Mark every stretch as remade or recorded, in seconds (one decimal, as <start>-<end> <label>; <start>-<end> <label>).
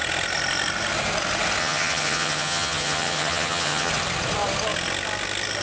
0.0-1.6 recorded; 1.6-3.9 remade; 3.9-5.6 recorded